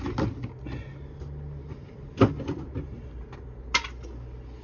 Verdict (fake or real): real